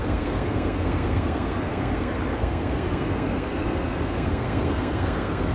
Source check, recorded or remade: remade